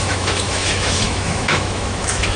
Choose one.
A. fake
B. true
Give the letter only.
A